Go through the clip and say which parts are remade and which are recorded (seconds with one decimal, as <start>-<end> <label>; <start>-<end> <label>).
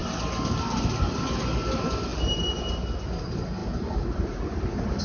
0.0-5.0 recorded